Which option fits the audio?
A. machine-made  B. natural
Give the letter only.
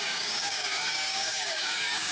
A